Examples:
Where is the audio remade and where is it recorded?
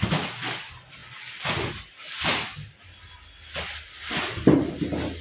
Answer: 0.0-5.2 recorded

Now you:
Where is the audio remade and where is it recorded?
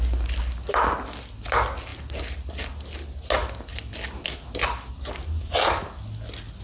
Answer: 0.0-6.6 recorded